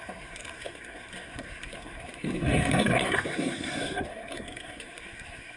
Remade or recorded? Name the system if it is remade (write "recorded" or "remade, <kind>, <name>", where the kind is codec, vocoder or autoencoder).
remade, codec, SNAC